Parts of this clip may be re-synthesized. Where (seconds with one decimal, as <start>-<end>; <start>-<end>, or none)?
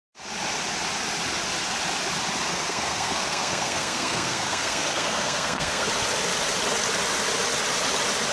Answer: 2.5-5.9